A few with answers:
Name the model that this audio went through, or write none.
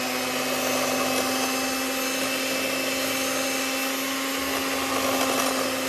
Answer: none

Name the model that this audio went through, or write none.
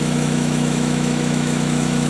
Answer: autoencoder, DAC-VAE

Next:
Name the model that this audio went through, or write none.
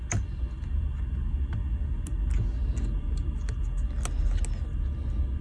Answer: none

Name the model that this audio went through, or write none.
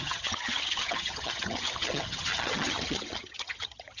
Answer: vocoder, HiFi-GAN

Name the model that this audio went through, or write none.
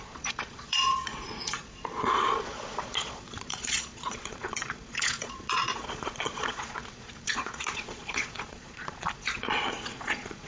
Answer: vocoder, Vocos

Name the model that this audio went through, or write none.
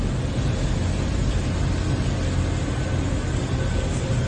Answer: none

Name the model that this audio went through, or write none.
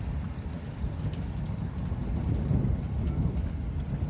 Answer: none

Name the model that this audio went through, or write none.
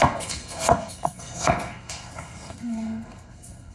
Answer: codec, SNAC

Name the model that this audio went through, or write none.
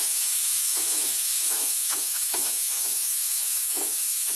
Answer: autoencoder, DAC-VAE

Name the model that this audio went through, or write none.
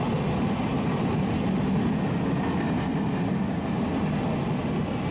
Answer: none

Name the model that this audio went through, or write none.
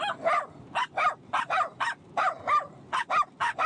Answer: none